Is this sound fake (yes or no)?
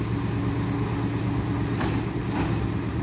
no